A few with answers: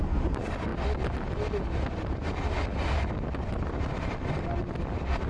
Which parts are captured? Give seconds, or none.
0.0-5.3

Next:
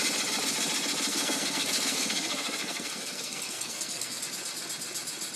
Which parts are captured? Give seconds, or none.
0.0-1.1; 4.2-5.4

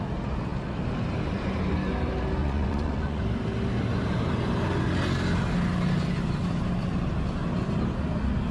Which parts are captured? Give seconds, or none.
0.0-2.4; 3.2-8.5

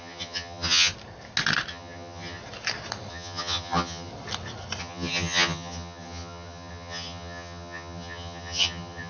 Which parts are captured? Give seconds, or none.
0.9-1.7; 2.4-3.1; 4.1-4.8

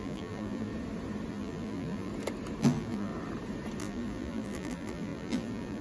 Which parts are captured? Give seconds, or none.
0.7-1.3; 2.1-2.6; 3.1-3.8

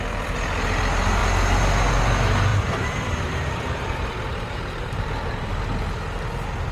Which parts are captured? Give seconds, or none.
0.0-2.5; 5.5-6.7

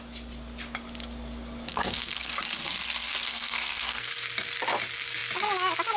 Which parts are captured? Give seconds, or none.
0.0-1.7; 2.4-3.1; 4.1-6.0

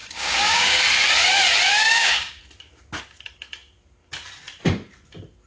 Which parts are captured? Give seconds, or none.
0.8-1.7; 2.4-5.5